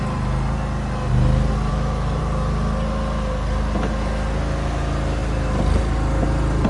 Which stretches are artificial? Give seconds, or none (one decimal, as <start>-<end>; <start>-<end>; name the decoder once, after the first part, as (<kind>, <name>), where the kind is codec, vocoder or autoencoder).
1.7-2.2 (autoencoder, DAC-VAE)